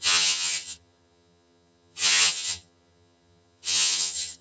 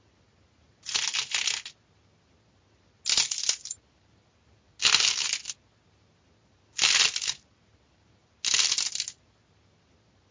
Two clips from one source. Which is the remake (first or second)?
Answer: first